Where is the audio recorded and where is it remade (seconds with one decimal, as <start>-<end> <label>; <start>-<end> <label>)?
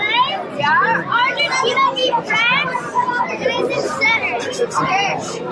0.0-5.5 remade